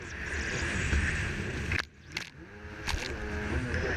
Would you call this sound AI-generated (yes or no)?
no